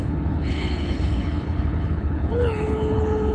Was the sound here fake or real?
fake